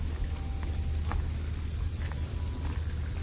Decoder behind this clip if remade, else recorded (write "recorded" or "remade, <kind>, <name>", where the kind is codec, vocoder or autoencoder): recorded